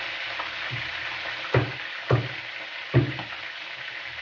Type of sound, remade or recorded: recorded